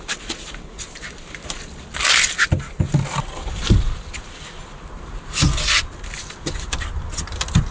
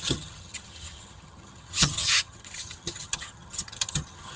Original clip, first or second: first